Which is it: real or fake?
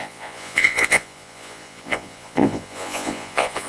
fake